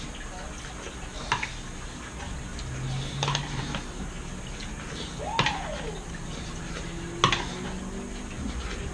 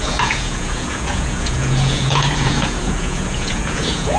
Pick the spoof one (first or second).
second